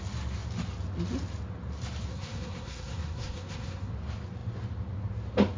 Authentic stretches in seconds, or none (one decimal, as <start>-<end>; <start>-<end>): 0.0-2.1; 3.9-5.6